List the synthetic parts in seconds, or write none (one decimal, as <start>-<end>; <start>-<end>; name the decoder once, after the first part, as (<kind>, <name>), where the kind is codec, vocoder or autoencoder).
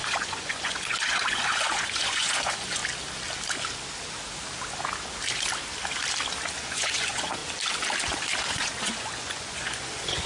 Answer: 0.0-2.8 (vocoder, Vocos); 6.5-7.4; 8.4-10.3